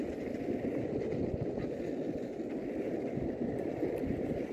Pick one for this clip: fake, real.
fake